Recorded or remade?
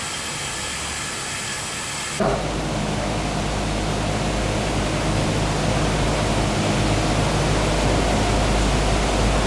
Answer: recorded